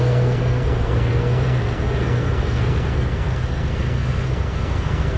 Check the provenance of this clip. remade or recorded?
remade